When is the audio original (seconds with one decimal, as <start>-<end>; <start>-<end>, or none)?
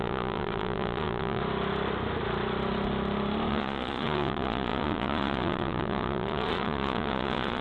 1.4-3.5